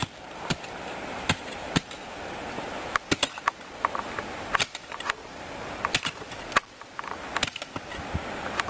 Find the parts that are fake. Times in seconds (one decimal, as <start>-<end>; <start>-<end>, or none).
5.2-5.8